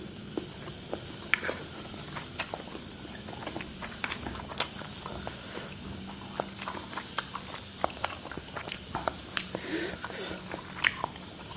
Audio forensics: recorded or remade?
remade